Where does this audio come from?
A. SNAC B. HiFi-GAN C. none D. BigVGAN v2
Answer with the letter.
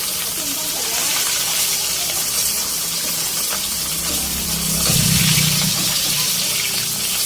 D